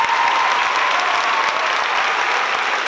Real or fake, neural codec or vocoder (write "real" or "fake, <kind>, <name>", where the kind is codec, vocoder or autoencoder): real